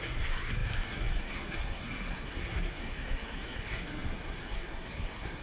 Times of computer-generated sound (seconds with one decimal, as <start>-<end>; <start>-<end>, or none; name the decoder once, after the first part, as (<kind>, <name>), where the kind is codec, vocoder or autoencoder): 0.0-5.4 (codec, SNAC)